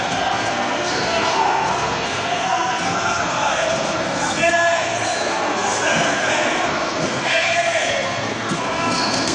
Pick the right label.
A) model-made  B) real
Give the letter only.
A